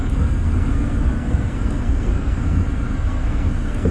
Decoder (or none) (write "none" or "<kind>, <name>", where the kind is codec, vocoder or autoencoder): codec, SNAC